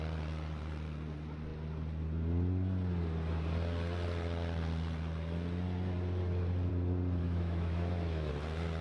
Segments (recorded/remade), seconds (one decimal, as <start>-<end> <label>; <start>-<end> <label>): 0.0-7.2 recorded; 7.2-8.3 remade; 8.3-8.8 recorded